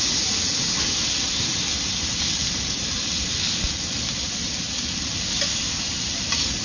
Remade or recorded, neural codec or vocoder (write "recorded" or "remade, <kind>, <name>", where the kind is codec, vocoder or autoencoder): recorded